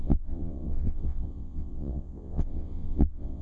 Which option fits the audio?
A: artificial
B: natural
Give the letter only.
A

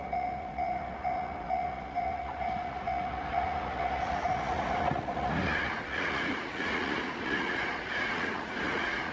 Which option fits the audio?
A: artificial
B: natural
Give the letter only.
A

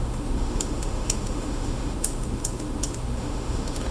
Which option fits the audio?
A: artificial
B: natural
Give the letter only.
A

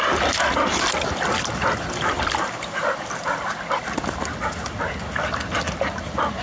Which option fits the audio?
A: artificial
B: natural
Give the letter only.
B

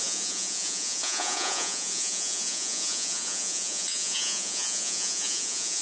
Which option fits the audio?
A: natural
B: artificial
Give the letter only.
B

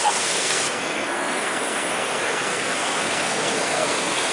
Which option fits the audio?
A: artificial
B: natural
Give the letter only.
A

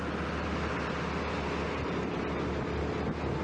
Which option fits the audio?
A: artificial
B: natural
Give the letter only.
B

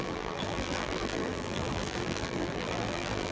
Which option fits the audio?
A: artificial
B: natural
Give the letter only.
A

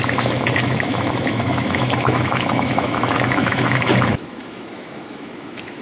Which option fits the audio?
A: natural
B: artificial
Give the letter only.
B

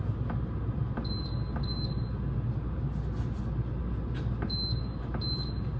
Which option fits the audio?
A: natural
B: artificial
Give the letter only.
A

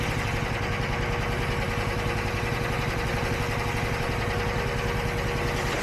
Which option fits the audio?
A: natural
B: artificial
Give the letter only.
A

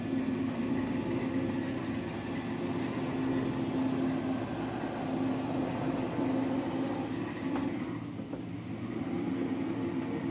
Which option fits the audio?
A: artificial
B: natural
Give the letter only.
B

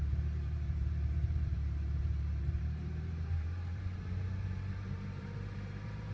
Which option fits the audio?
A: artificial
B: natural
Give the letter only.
A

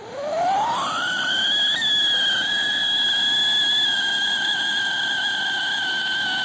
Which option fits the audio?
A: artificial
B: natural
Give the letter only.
B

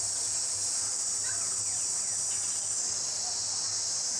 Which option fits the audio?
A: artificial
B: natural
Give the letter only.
B